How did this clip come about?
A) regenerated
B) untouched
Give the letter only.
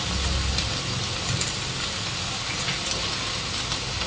B